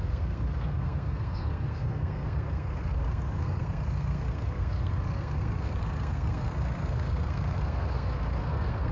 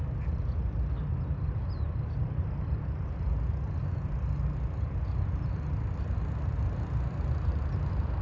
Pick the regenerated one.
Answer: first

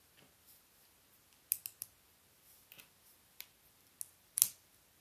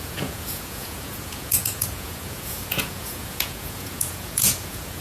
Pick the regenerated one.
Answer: second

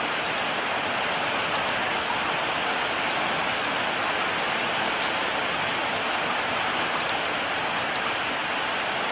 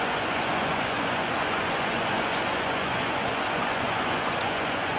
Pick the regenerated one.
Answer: second